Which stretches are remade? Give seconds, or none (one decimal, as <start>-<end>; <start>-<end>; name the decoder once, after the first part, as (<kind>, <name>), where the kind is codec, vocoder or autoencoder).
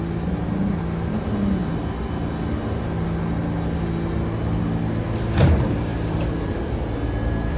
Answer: 5.9-6.8 (vocoder, BigVGAN v2)